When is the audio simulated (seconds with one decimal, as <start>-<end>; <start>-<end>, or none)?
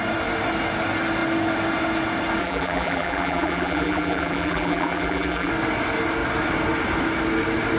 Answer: 2.4-5.5